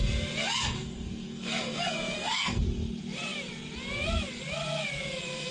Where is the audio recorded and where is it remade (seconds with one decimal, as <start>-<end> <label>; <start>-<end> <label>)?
0.0-0.4 recorded; 0.4-2.6 remade; 2.6-5.5 recorded